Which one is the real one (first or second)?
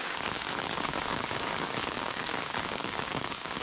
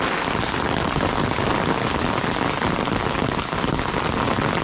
second